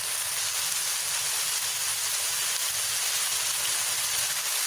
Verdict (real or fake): real